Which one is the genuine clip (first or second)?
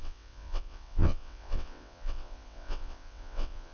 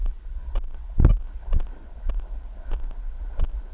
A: second